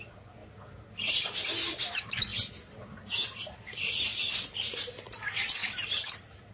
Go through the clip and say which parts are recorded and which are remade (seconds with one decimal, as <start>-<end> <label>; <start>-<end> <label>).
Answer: 0.0-0.4 remade; 0.4-1.1 recorded; 1.1-2.3 remade; 2.3-3.0 recorded; 3.0-6.5 remade